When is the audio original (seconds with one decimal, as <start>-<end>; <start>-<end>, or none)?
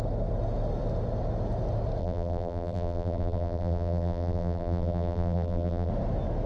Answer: 0.0-2.0; 5.9-6.5